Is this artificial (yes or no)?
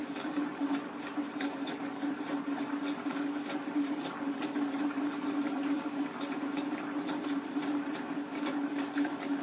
yes